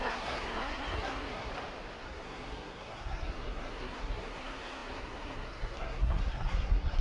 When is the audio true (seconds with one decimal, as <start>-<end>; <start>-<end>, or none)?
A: 1.5-2.0